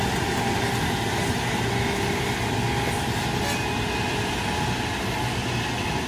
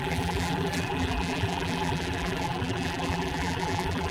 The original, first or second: first